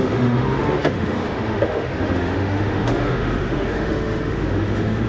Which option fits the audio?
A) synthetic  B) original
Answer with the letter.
A